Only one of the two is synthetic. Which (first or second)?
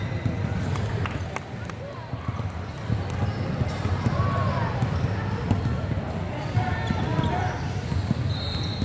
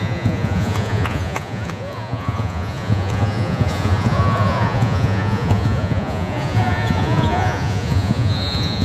second